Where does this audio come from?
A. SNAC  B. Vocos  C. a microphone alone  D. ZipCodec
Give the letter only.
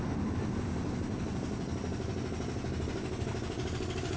C